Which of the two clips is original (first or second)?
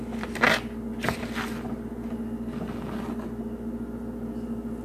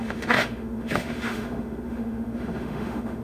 first